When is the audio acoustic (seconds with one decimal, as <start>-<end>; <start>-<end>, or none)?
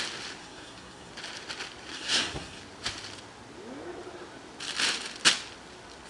0.0-0.4; 1.1-1.9; 2.6-6.1